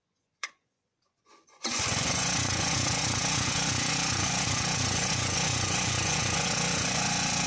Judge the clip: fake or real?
fake